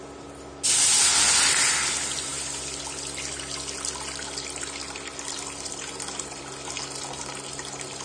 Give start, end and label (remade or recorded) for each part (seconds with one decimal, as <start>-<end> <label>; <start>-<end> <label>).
0.0-8.0 recorded

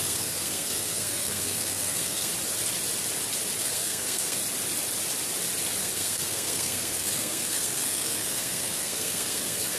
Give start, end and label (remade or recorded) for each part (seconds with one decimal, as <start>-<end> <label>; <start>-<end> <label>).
0.0-2.3 remade; 2.3-3.6 recorded; 3.6-4.4 remade; 4.4-5.8 recorded; 5.8-9.8 remade

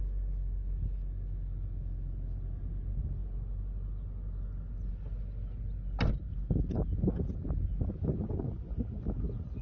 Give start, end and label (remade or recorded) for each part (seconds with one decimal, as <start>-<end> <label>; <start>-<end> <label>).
0.0-9.6 recorded